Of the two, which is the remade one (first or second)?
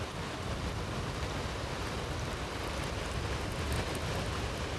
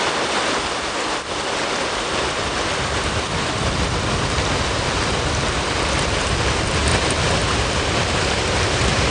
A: second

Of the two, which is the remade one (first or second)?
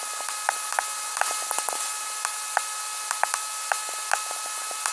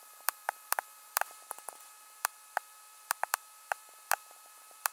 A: second